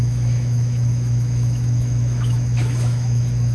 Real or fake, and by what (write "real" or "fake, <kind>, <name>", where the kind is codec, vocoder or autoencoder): fake, autoencoder, DAC-VAE